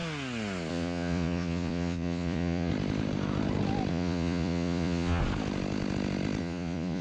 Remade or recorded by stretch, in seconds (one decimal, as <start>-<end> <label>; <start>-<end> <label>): 0.0-0.7 recorded; 0.7-2.7 remade; 2.7-3.9 recorded; 3.9-5.2 remade; 5.2-6.4 recorded; 6.4-7.0 remade

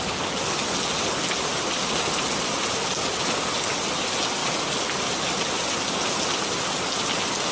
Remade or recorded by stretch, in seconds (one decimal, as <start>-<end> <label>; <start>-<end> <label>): 0.0-7.5 recorded